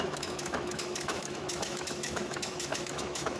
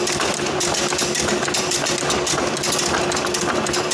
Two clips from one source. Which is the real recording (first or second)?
second